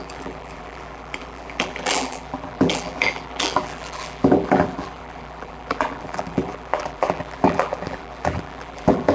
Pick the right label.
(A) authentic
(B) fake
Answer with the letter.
B